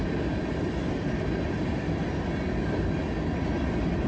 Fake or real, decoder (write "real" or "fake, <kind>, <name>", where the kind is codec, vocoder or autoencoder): real